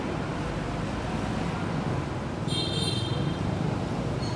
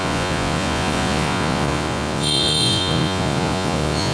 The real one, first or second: first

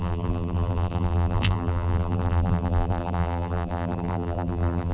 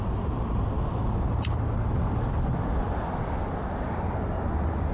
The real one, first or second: second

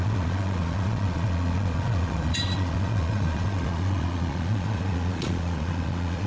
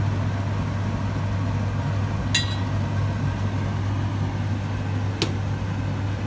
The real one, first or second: second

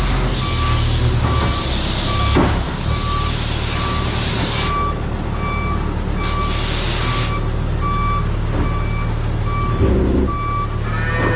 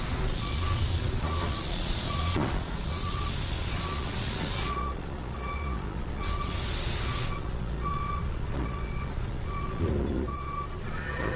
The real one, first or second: first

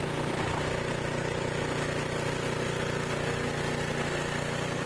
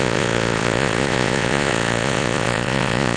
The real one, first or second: first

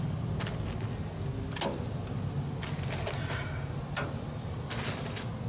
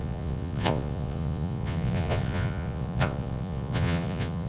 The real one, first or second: first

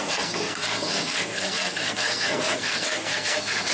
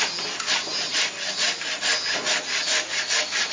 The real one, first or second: second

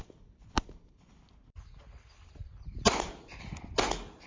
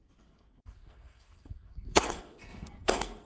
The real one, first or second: first